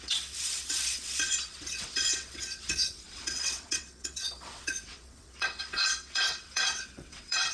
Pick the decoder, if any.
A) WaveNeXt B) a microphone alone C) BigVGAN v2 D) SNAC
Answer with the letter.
A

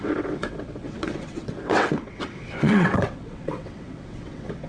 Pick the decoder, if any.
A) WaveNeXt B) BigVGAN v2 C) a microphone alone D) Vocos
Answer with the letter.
A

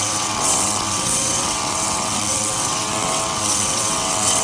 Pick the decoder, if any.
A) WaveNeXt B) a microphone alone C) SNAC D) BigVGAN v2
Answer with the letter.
A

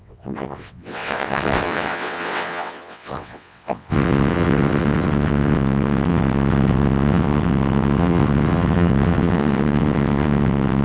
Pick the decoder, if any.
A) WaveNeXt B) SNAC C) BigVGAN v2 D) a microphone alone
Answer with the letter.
A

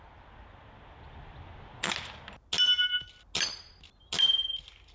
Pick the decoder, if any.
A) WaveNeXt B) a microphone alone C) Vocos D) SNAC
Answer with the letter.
B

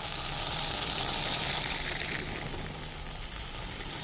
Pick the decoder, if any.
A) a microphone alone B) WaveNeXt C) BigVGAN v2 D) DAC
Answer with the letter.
A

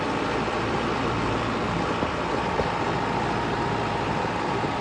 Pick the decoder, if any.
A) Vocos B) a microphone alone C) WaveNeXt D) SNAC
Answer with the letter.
B